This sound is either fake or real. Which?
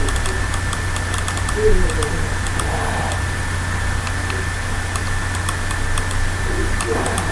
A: real